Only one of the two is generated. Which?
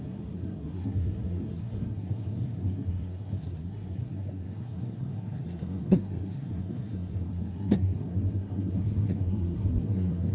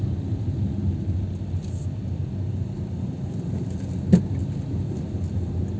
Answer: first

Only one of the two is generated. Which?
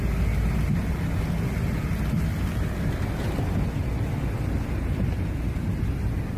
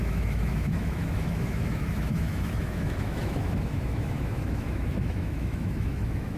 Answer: second